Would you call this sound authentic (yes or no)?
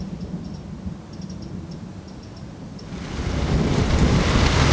yes